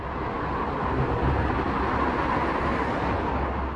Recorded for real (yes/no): yes